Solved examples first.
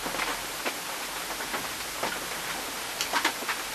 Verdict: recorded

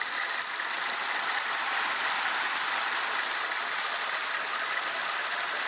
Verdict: recorded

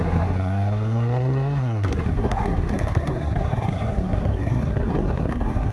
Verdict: remade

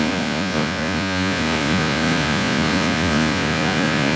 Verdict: remade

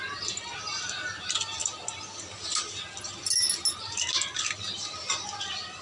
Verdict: recorded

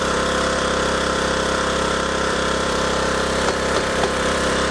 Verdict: remade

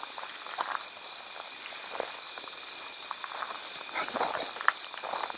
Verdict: recorded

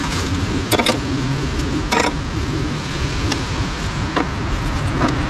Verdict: recorded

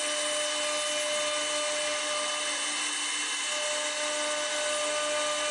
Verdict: recorded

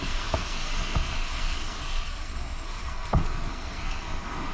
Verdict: remade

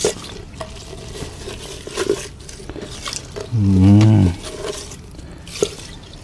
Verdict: recorded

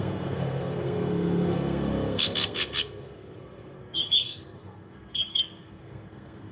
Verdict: remade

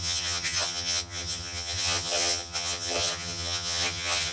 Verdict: remade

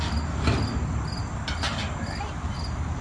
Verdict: recorded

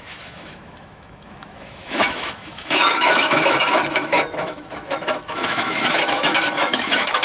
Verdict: remade